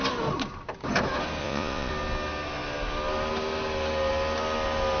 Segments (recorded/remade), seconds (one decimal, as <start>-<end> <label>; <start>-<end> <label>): 0.0-1.4 recorded; 1.4-1.9 remade; 1.9-5.0 recorded